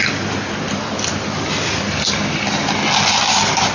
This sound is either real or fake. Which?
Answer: real